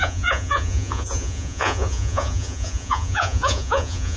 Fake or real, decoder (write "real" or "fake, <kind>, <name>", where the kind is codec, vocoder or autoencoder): fake, vocoder, Vocos